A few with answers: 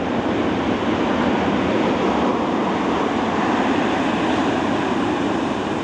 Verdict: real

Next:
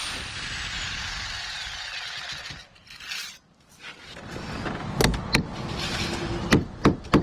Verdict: real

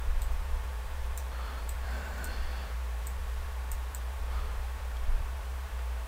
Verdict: fake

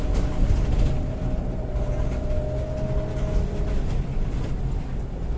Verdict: real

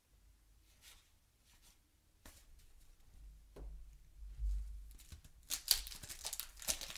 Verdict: real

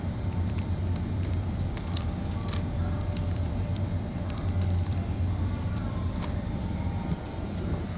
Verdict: fake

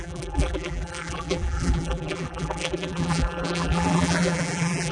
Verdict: fake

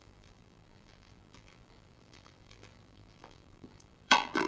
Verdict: fake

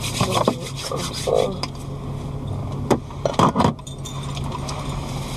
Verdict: real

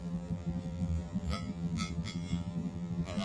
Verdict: fake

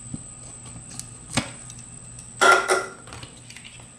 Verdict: real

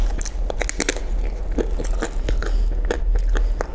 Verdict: real